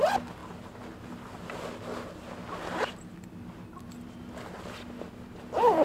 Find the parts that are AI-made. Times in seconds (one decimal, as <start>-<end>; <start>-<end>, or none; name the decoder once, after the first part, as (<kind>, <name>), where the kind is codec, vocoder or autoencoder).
none